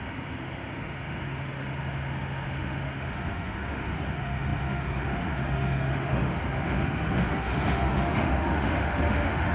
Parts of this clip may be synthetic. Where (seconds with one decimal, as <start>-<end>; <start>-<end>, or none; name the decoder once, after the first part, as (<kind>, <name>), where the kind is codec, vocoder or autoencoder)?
0.0-9.5 (autoencoder, DAC-VAE)